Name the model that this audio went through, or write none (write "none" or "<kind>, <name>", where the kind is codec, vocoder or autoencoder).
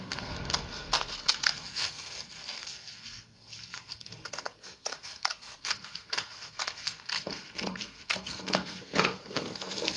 codec, SNAC